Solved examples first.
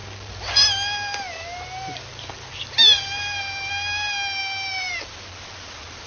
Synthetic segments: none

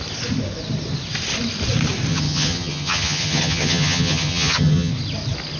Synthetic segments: 2.1-4.9 (vocoder, HiFi-GAN)

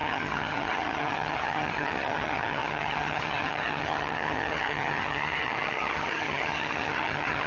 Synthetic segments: 0.0-7.5 (vocoder, HiFi-GAN)

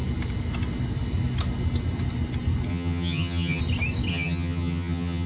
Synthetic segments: 2.7-3.6 (vocoder, HiFi-GAN); 4.1-5.3